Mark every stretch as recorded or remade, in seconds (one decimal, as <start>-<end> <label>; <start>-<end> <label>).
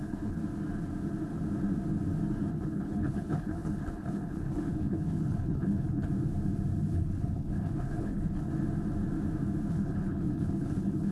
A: 0.0-0.4 remade; 0.4-2.5 recorded; 2.5-6.1 remade; 6.1-6.8 recorded; 6.8-8.5 remade; 8.5-9.7 recorded; 9.7-11.1 remade